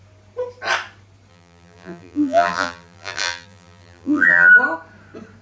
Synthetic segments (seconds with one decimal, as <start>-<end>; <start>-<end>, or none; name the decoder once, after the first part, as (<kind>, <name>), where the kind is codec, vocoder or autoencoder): 1.3-4.5 (vocoder, BigVGAN v2)